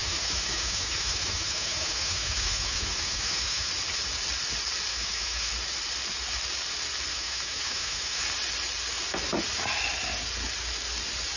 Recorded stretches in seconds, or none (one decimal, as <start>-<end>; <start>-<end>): 3.7-4.9; 5.5-7.1; 8.2-11.4